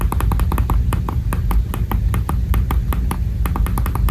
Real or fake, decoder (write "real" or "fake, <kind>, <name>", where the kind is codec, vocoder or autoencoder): real